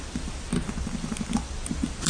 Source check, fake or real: real